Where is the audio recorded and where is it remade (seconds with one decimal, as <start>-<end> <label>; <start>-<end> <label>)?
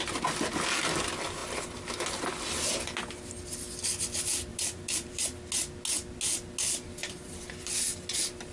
0.0-4.5 recorded; 4.5-5.2 remade; 5.2-7.0 recorded; 7.0-7.7 remade; 7.7-8.5 recorded